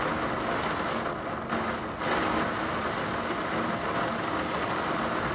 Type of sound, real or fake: real